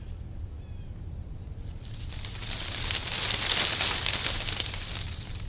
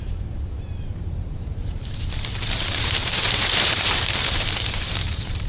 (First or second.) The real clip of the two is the first